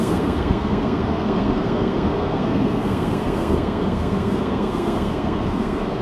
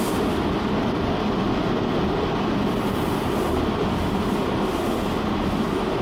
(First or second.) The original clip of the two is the second